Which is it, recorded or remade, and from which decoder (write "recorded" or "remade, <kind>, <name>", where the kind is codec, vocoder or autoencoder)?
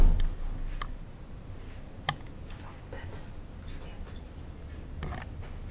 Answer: recorded